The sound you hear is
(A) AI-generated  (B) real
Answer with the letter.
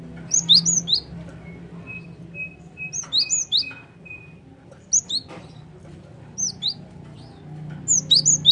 B